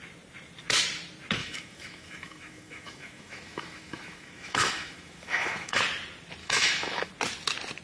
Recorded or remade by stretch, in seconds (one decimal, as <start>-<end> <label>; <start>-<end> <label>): 0.0-1.4 recorded; 1.4-5.8 remade; 5.8-6.4 recorded; 6.4-7.1 remade; 7.1-7.8 recorded